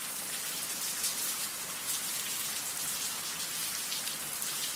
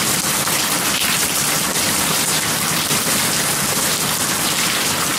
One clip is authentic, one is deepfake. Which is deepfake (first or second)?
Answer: first